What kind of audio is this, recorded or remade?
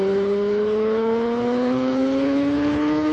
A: remade